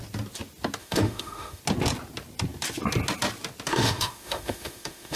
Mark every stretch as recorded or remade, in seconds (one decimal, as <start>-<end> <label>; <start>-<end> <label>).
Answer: 0.0-0.8 recorded; 0.8-1.6 remade; 1.6-3.7 recorded; 3.7-5.2 remade